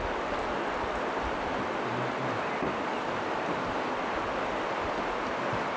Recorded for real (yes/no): yes